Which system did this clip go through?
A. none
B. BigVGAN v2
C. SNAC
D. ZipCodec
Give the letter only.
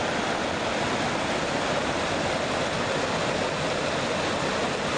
A